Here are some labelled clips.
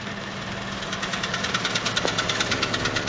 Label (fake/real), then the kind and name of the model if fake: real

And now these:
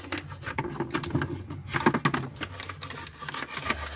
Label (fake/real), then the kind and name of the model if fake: real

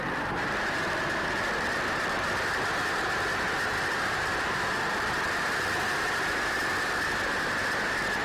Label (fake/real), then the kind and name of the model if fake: fake, vocoder, BigVGAN v2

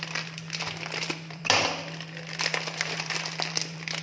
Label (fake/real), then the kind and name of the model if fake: fake, vocoder, BigVGAN v2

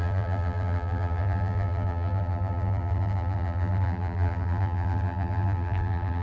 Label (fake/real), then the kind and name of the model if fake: fake, vocoder, BigVGAN v2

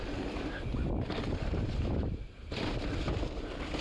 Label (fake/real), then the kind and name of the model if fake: fake, vocoder, BigVGAN v2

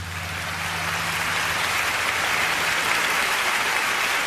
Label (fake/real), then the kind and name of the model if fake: real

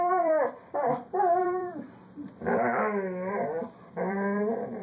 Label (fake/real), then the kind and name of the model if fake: fake, vocoder, BigVGAN v2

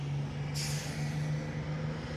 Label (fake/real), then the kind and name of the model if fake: real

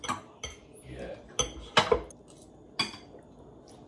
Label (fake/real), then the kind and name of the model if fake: real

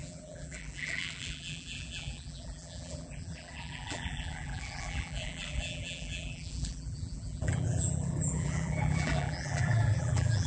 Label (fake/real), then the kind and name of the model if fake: fake, vocoder, BigVGAN v2